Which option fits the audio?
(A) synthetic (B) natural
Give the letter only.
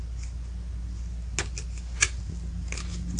B